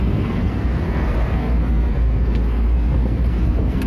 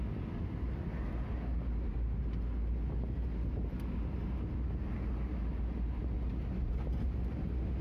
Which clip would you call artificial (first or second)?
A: first